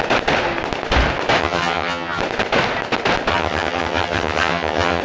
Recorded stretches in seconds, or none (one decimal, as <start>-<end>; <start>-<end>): 0.0-1.4; 2.2-3.3